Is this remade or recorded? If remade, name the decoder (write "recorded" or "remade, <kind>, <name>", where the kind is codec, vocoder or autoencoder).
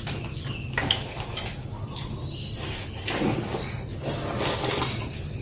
recorded